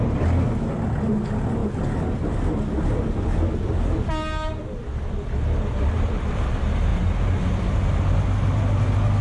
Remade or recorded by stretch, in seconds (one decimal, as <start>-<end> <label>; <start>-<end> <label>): 0.0-9.2 recorded

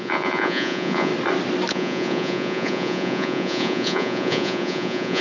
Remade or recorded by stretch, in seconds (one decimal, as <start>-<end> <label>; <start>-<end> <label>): 0.0-1.1 remade; 1.1-1.7 recorded; 1.7-5.2 remade

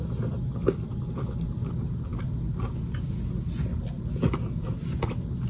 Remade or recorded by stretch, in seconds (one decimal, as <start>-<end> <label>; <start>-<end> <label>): 0.0-5.5 recorded

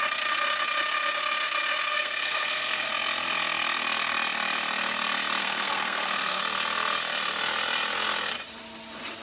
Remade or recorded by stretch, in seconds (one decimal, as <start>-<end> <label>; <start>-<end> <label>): 0.0-1.9 recorded; 1.9-2.9 remade; 2.9-5.4 recorded; 5.4-6.4 remade; 6.4-9.2 recorded

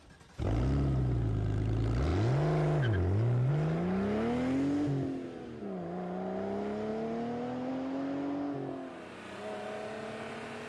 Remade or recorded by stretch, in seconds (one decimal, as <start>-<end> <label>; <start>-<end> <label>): 0.0-10.7 recorded